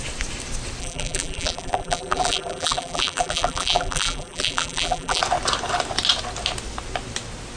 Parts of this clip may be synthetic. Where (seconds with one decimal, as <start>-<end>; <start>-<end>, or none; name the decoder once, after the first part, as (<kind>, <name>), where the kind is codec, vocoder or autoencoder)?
0.8-5.2 (vocoder, BigVGAN v2)